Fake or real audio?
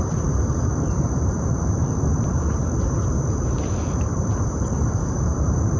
fake